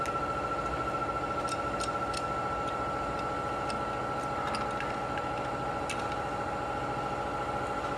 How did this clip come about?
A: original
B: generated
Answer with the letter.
A